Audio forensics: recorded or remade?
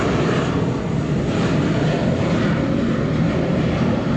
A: recorded